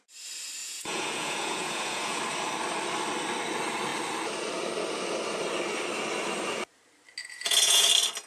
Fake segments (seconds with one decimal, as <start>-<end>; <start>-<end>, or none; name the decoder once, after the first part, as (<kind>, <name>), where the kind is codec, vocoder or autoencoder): 0.6-2.2 (vocoder, Vocos); 7.2-7.9